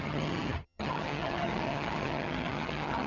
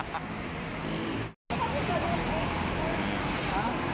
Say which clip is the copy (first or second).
first